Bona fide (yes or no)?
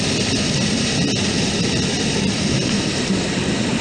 yes